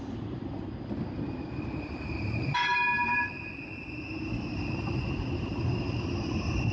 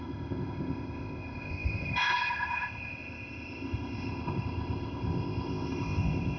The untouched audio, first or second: first